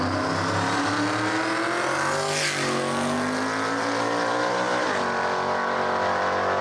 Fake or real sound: real